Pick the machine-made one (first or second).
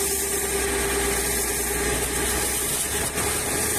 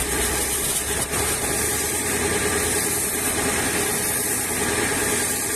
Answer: second